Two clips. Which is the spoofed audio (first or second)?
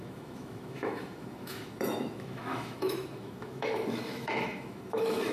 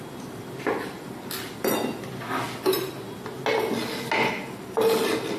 first